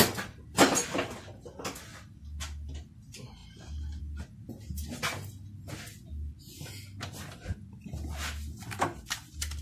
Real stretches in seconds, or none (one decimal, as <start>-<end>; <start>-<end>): 0.0-9.6

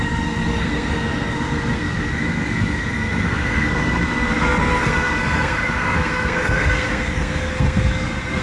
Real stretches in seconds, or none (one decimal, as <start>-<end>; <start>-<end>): none

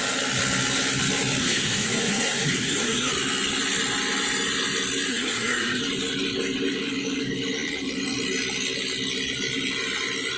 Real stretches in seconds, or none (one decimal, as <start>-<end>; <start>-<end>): 0.0-1.4; 3.1-5.1; 5.8-10.4

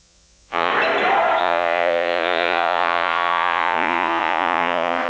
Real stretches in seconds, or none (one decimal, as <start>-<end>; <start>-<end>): 0.7-1.4

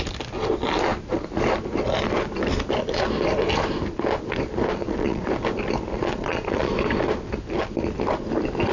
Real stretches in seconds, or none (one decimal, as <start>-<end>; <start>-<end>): 0.0-4.8; 5.3-5.9; 6.7-8.7

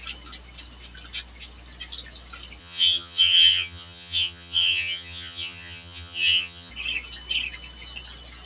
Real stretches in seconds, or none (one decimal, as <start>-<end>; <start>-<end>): 0.0-2.6; 6.7-8.5